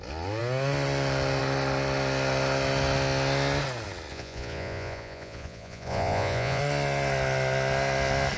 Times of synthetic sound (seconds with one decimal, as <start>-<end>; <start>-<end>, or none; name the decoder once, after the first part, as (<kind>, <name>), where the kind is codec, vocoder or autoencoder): 4.1-6.6 (vocoder, Vocos)